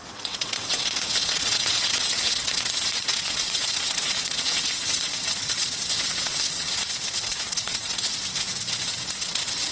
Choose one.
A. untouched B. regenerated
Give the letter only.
B